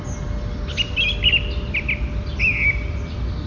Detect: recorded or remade recorded